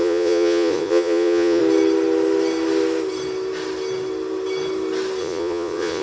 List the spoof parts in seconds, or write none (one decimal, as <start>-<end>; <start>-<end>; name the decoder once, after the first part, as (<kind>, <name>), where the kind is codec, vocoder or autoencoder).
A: 0.0-1.6 (vocoder, Vocos); 5.2-6.0